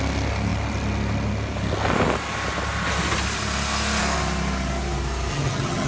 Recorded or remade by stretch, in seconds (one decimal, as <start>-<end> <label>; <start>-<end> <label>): 0.0-5.3 recorded; 5.3-5.9 remade